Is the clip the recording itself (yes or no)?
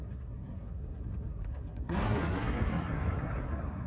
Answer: no